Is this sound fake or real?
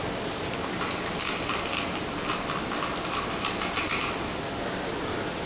real